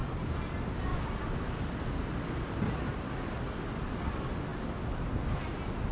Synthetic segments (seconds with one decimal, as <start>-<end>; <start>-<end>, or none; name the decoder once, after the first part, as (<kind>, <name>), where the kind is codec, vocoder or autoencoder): 0.9-4.0 (vocoder, BigVGAN v2)